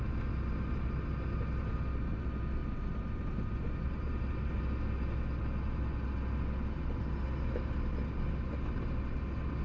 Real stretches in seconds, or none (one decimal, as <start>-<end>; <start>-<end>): 0.0-2.6; 4.6-9.6